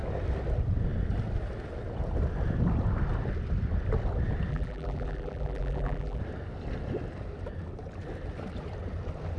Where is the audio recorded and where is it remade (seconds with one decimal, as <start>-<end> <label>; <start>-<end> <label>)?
0.0-4.5 recorded; 4.5-6.2 remade; 6.2-9.4 recorded